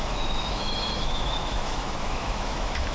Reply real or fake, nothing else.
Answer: fake